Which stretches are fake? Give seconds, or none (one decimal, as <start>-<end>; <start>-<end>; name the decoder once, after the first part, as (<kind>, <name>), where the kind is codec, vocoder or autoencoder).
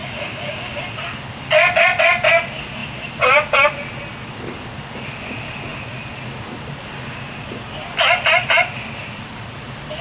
0.0-0.8 (codec, DAC)